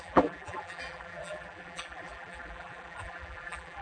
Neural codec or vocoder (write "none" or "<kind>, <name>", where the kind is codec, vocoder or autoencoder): vocoder, BigVGAN v2